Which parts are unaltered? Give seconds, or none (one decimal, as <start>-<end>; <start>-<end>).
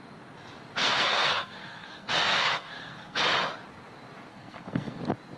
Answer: 0.0-0.8; 3.2-4.3; 5.0-5.4